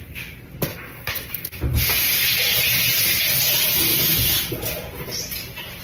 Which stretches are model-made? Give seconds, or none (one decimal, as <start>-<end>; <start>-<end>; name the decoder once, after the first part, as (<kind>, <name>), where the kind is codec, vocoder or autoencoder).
0.7-1.6 (autoencoder, DAC-VAE); 3.9-4.5